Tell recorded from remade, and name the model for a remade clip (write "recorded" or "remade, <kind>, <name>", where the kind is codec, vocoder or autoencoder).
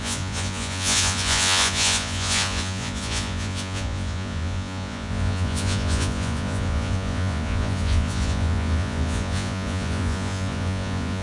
remade, vocoder, Vocos